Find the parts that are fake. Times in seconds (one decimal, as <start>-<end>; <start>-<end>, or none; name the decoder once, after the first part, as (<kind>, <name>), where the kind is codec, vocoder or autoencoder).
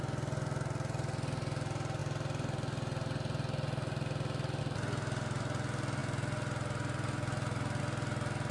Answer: none